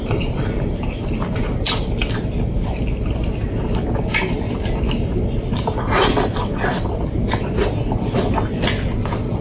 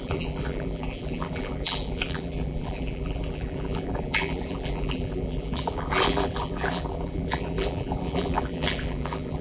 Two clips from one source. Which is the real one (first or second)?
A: first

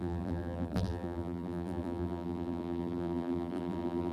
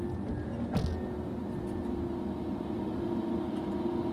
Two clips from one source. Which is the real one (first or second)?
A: second